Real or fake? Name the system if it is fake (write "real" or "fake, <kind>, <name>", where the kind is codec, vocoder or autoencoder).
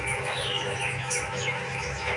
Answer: fake, autoencoder, DAC-VAE